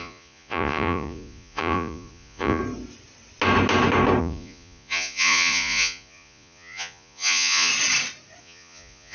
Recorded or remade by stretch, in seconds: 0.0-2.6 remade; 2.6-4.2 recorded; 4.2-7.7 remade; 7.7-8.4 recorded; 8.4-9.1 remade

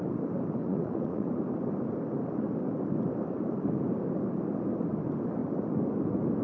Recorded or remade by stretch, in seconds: 0.0-0.6 recorded; 0.6-1.3 remade; 1.3-6.4 recorded

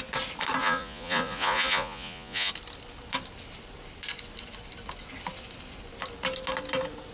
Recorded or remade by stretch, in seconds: 0.0-0.6 recorded; 0.6-2.5 remade; 2.5-7.1 recorded

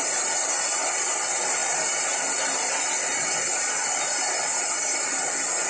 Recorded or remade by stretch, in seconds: 0.0-5.7 recorded

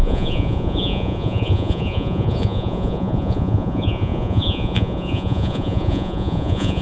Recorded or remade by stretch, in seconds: 0.0-6.8 remade

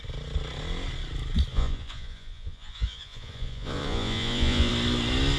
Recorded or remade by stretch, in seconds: 0.0-1.5 recorded; 1.5-4.7 remade; 4.7-5.4 recorded

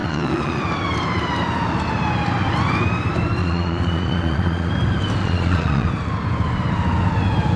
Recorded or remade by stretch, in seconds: 0.0-0.6 remade; 0.6-3.4 recorded; 3.4-4.7 remade; 4.7-5.2 recorded; 5.2-5.9 remade; 5.9-7.6 recorded